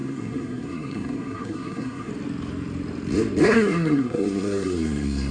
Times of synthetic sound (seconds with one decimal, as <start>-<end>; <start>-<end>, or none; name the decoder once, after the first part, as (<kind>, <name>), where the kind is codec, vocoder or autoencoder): 0.0-2.1 (codec, SNAC); 3.4-5.3